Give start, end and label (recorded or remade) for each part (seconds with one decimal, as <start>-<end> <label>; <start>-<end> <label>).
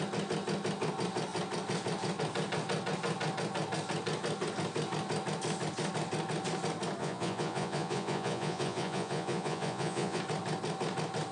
0.0-7.0 recorded; 7.0-10.2 remade; 10.2-11.3 recorded